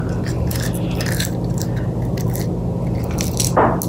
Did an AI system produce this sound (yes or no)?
no